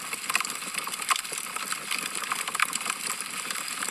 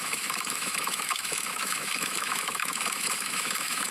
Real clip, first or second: first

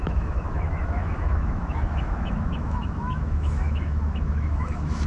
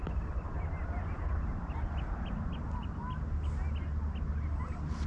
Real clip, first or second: second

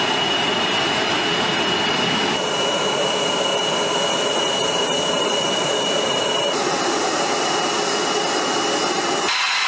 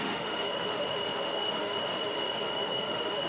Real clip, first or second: first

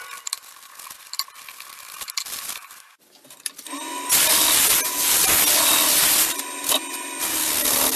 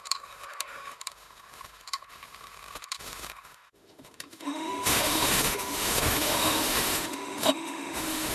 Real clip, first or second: first